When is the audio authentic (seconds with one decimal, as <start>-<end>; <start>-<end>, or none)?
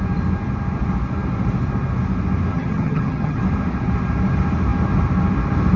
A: 0.0-2.5; 3.4-5.8